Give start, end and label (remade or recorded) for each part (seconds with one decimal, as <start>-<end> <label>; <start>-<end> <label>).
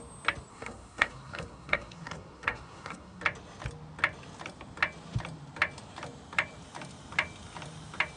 0.0-0.5 recorded; 0.5-3.2 remade; 3.2-8.2 recorded